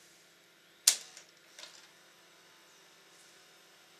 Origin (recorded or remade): recorded